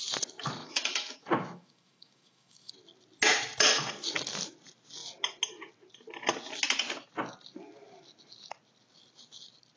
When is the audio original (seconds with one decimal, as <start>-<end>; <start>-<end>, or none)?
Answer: 0.0-0.6; 2.7-9.8